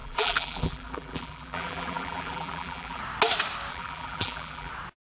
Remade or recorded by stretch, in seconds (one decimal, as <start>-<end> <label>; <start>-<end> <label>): 0.0-3.0 remade; 3.0-3.7 recorded; 3.7-4.7 remade; 4.7-5.2 recorded